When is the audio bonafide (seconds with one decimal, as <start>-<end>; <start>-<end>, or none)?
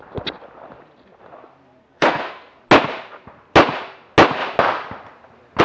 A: 0.0-1.8; 2.6-5.6